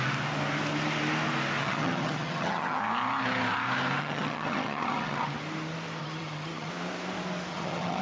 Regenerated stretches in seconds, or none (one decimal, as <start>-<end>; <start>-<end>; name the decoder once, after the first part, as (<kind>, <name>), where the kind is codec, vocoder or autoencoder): 1.6-2.8 (vocoder, HiFi-GAN); 4.0-5.4; 6.0-6.7; 7.5-8.0